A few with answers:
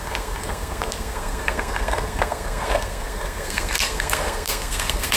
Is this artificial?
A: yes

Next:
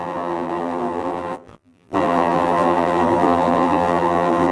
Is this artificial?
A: yes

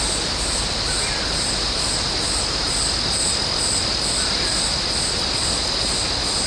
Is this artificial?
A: no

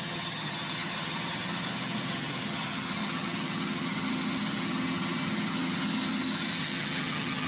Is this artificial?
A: yes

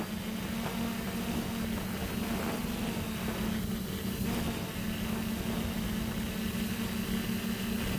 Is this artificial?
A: no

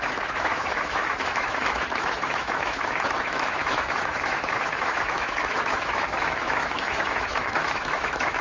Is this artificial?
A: yes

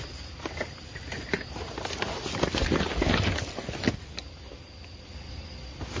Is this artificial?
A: no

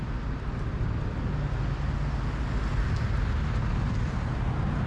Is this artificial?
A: no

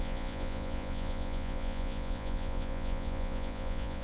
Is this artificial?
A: yes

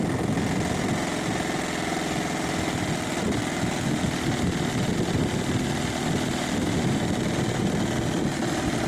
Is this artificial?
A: no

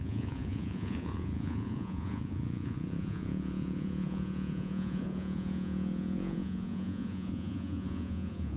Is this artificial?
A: yes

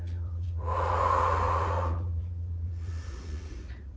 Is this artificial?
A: yes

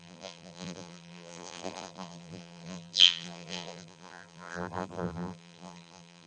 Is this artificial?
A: yes